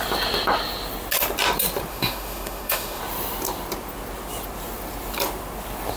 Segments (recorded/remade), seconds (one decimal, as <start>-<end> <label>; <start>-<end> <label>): 0.0-1.9 recorded; 1.9-3.0 remade; 3.0-6.0 recorded